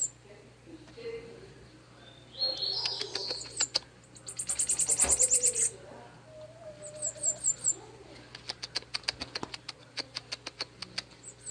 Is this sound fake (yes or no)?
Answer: no